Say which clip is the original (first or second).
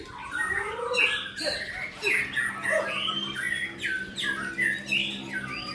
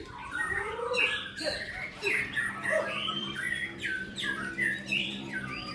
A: first